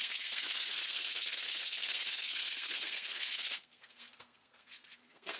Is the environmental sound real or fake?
fake